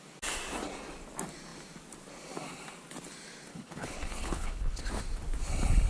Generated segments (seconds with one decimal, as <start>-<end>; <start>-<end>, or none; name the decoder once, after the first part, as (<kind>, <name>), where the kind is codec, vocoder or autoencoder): 3.5-4.9 (codec, HILCodec)